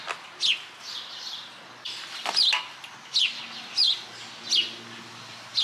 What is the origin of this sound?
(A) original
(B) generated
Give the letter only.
A